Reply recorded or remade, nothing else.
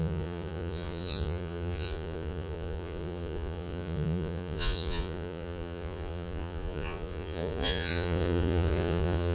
remade